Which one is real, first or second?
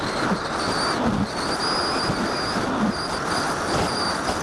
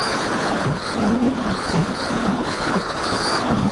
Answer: first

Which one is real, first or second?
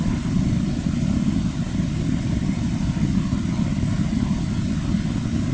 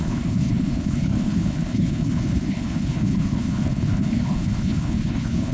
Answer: first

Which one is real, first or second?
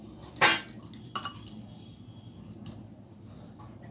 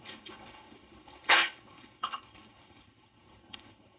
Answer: first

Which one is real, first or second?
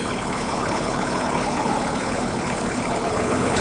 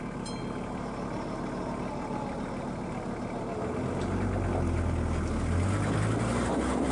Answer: second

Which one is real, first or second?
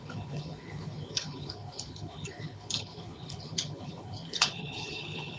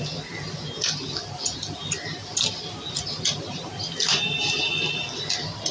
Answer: second